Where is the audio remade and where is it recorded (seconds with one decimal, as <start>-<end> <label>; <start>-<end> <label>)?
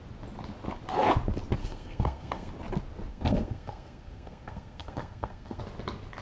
0.0-1.6 recorded; 1.6-2.5 remade; 2.5-3.1 recorded; 3.1-5.6 remade; 5.6-6.2 recorded